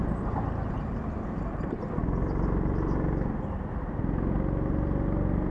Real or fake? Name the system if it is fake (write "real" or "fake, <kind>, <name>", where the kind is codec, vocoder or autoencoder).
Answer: real